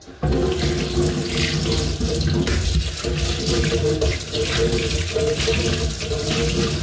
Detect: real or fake real